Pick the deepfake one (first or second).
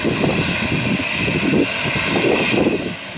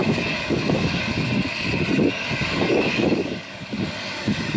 second